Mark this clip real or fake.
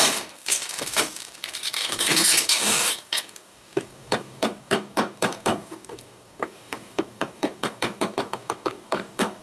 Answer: fake